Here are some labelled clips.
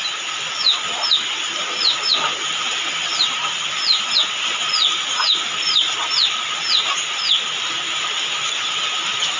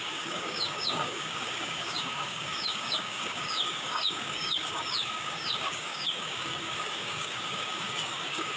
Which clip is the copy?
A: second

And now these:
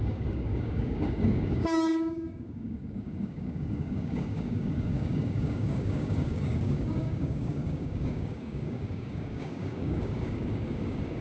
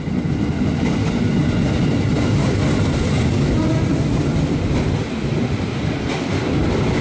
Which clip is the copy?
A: first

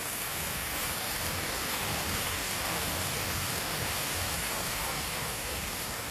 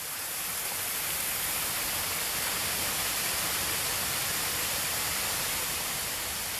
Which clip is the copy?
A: first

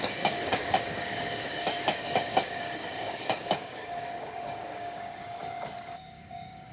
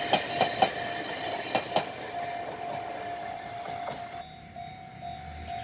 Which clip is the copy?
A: first